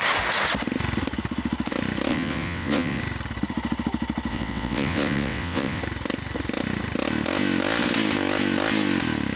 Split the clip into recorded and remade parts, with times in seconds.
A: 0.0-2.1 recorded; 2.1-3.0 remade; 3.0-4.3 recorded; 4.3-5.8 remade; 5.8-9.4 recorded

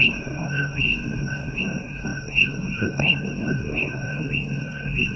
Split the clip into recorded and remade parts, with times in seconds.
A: 0.0-5.2 remade